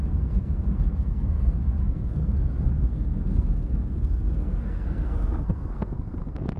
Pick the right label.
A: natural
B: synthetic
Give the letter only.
B